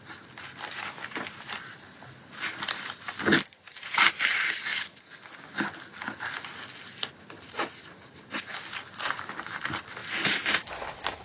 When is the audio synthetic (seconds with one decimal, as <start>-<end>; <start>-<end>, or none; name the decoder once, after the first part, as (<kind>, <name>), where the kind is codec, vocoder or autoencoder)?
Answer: none